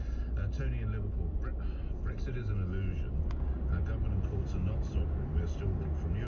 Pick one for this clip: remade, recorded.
recorded